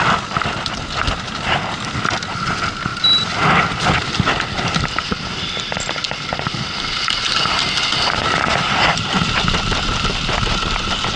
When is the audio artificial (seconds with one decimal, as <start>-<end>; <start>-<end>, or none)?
8.5-9.1